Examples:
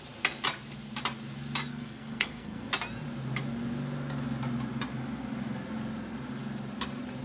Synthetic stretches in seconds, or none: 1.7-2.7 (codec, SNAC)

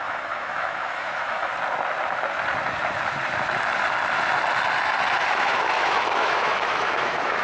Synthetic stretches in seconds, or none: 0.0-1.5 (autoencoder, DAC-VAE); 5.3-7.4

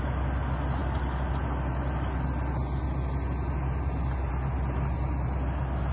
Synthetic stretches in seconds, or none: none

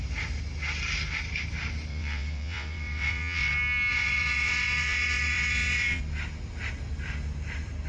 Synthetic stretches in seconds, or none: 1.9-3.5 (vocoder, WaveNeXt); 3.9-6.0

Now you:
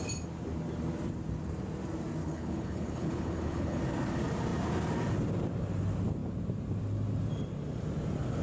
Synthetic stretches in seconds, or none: 2.2-3.8 (codec, HILCodec)

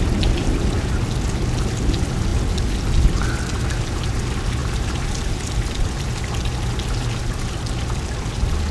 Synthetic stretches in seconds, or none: none

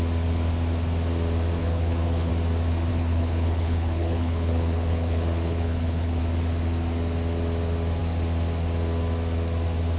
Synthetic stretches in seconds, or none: 1.6-2.3 (codec, HILCodec); 2.9-6.2

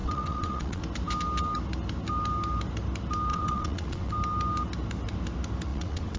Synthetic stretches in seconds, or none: 0.0-0.8 (vocoder, WaveNeXt); 3.3-4.1; 5.7-6.2